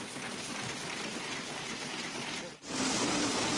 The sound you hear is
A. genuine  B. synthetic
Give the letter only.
A